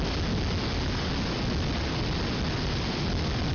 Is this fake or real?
real